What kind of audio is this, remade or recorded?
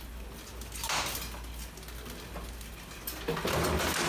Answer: recorded